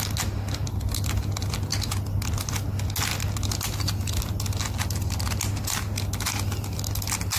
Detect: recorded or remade recorded